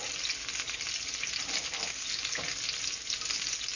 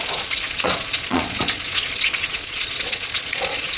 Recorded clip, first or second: first